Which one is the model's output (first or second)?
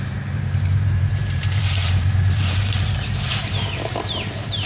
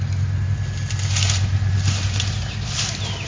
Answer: first